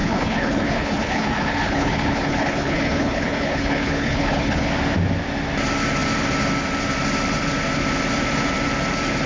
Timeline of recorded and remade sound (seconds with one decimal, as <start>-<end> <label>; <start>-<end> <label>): 0.0-4.7 remade; 4.7-9.3 recorded